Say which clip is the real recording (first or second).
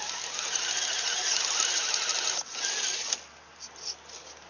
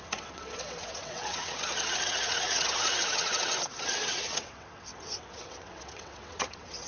first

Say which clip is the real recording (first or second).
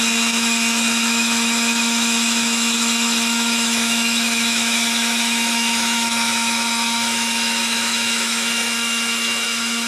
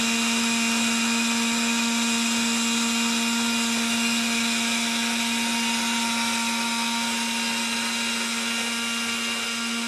second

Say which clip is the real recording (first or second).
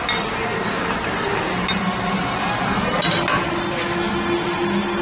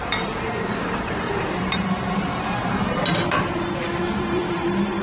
first